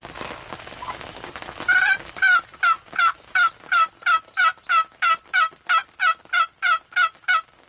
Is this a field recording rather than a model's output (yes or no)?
yes